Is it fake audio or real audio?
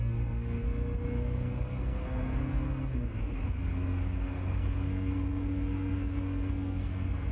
fake